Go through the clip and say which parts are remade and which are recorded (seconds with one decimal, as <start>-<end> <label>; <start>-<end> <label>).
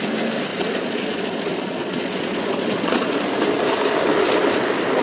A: 0.0-0.5 recorded; 0.5-3.1 remade; 3.1-5.0 recorded